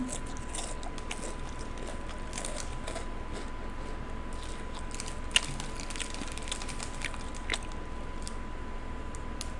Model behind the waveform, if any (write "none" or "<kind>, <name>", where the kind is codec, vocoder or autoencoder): none